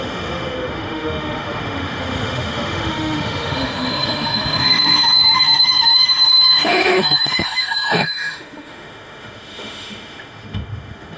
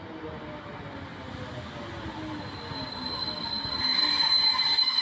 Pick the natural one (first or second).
second